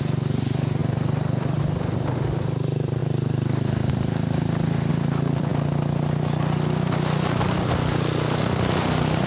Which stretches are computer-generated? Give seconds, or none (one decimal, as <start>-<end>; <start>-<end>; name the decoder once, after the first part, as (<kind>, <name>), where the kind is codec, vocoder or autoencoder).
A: 0.0-3.0 (vocoder, BigVGAN v2); 4.9-5.5; 8.4-9.3